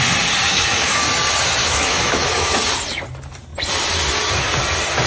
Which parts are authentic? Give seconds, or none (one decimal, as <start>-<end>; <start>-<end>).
0.0-0.5; 1.0-1.6; 2.6-5.1